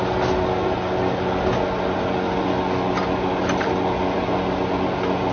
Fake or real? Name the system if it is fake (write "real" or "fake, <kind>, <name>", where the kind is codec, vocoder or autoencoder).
real